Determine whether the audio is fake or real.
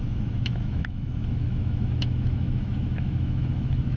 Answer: fake